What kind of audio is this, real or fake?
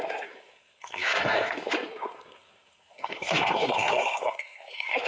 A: fake